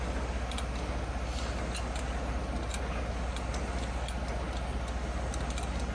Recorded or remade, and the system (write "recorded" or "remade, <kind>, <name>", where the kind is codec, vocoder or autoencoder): recorded